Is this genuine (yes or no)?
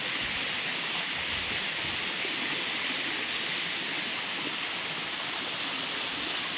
yes